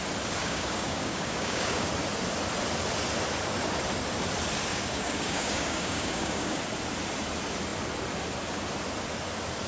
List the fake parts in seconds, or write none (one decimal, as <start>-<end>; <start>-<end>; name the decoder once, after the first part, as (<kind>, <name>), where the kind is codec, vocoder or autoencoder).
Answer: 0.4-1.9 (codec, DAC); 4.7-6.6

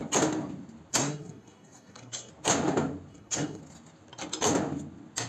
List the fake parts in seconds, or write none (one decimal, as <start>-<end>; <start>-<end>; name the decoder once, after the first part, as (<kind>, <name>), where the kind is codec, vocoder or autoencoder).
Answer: 0.9-2.3 (codec, SNAC); 3.1-3.6

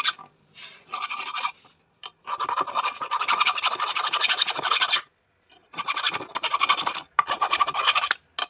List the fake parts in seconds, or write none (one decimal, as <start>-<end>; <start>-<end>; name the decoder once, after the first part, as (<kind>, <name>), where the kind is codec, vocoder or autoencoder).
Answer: none

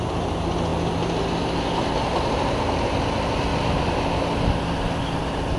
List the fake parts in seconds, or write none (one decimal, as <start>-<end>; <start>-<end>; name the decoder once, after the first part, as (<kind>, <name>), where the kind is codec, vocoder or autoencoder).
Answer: none

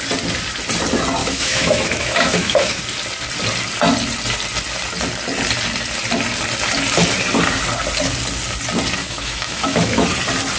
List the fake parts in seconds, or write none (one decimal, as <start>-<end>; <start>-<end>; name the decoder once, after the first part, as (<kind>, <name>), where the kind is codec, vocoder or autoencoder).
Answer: 1.2-2.8 (autoencoder, DAC-VAE); 9.0-10.1

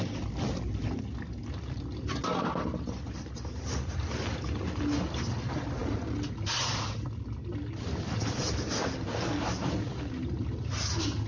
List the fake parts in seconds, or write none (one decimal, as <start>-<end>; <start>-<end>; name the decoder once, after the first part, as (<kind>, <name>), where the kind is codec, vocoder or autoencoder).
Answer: none